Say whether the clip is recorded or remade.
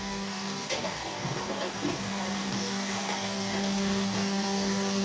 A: remade